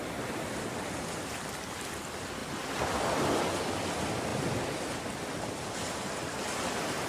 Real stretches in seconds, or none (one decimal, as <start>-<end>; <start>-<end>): 0.0-7.1